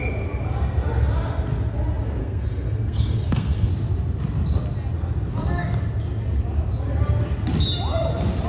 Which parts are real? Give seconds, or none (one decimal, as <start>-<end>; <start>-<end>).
0.0-2.2; 3.7-8.5